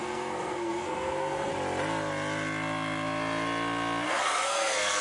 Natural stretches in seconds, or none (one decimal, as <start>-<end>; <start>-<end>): 1.5-4.1